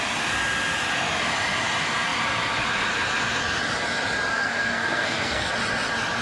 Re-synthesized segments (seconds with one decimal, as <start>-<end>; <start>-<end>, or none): 4.3-5.5